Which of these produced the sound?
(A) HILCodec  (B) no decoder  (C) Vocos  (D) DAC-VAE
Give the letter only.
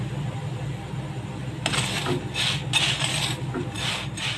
B